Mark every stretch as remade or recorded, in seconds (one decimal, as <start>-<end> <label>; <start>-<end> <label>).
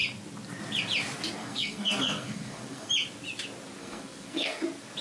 0.0-1.4 recorded; 1.4-2.9 remade; 2.9-3.8 recorded; 3.8-4.6 remade; 4.6-5.0 recorded